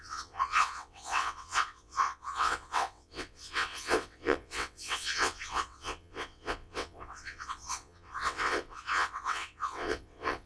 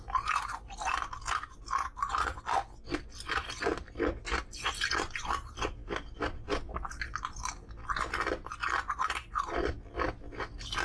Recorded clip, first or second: second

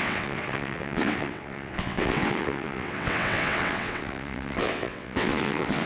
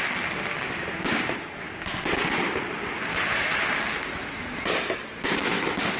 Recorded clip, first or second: second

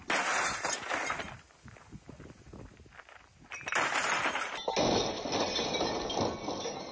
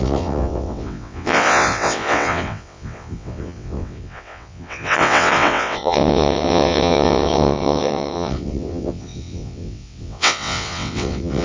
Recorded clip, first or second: first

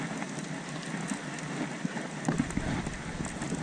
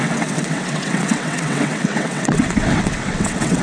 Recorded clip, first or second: first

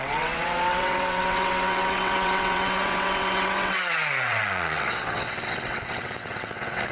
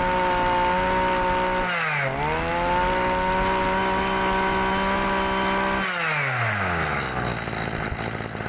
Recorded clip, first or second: second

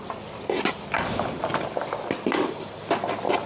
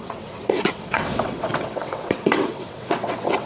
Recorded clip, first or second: first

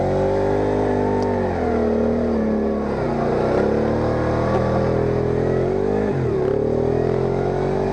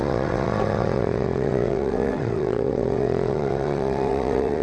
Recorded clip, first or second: first